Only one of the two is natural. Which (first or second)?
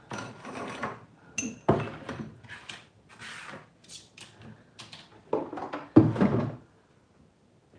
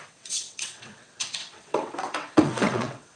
first